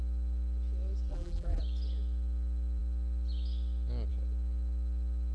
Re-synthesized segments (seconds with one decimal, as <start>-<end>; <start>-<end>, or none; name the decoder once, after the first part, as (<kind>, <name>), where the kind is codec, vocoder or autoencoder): 1.1-1.6 (vocoder, BigVGAN v2)